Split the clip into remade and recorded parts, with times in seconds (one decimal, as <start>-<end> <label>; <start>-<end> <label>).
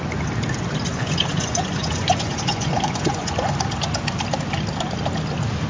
0.0-0.9 recorded; 0.9-3.3 remade; 3.3-5.7 recorded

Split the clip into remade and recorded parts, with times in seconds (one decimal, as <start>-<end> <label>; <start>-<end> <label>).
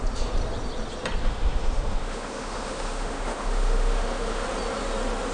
0.0-1.2 recorded; 1.2-4.4 remade; 4.4-5.3 recorded